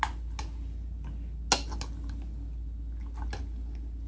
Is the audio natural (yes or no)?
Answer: yes